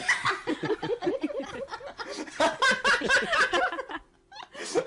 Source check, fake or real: real